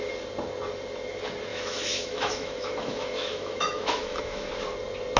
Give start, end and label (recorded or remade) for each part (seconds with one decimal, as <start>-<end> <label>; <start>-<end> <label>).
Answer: 0.0-1.5 recorded; 1.5-4.5 remade; 4.5-5.2 recorded